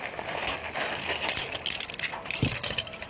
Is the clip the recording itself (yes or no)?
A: yes